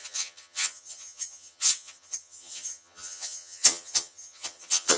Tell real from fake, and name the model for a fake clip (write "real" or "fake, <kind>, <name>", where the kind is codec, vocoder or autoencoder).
fake, vocoder, HiFi-GAN